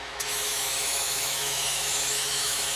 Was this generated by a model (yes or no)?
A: yes